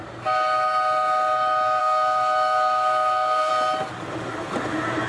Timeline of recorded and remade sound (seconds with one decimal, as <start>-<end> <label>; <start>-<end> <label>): 0.0-1.8 recorded; 1.8-3.5 remade; 3.5-5.1 recorded